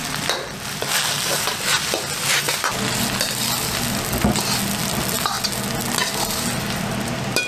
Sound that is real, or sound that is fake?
real